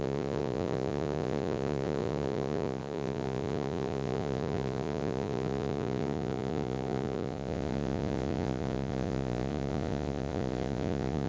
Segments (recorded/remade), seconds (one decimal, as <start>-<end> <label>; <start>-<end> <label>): 0.0-11.3 remade